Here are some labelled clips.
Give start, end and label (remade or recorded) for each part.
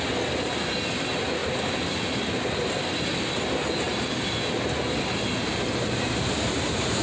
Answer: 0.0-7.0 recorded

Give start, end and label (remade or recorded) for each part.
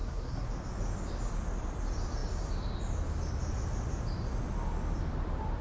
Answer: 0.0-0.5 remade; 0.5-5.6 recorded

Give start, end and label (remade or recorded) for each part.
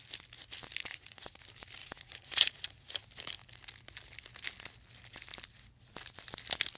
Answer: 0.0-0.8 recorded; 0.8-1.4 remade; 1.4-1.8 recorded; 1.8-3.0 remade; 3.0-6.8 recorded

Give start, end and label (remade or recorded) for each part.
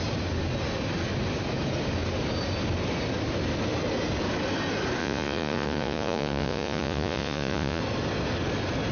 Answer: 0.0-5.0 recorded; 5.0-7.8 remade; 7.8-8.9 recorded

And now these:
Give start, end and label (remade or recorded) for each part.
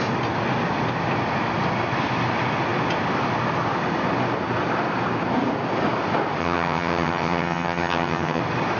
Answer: 0.0-6.4 recorded; 6.4-8.4 remade; 8.4-8.8 recorded